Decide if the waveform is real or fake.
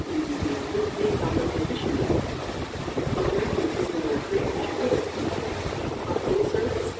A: real